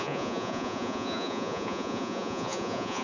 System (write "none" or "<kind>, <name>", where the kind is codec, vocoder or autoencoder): vocoder, Vocos